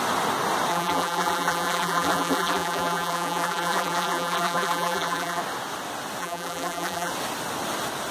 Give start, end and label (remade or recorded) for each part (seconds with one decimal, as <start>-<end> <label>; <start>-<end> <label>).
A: 0.0-0.7 recorded; 0.7-5.4 remade; 5.4-6.2 recorded; 6.2-7.1 remade; 7.1-8.1 recorded